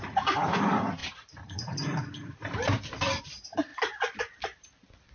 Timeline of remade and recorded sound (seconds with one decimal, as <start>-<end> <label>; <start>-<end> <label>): 0.0-3.7 remade; 3.7-4.2 recorded; 4.2-5.1 remade